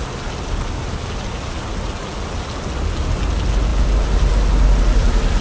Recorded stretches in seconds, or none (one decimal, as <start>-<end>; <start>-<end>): 0.0-5.4